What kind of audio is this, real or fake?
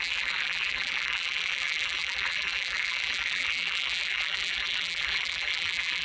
fake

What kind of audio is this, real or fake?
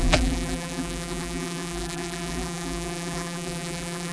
fake